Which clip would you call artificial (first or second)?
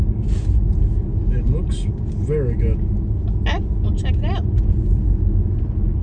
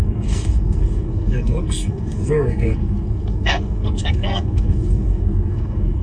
second